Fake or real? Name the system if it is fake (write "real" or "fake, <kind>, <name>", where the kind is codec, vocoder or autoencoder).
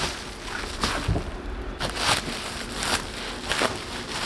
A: real